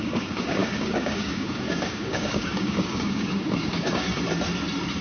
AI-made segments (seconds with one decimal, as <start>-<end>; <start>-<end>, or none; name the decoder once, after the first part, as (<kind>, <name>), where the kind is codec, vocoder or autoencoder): 0.0-4.1 (codec, DAC)